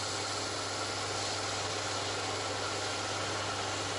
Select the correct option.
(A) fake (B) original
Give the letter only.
B